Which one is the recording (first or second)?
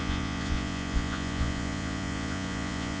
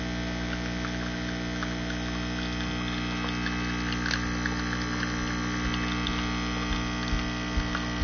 second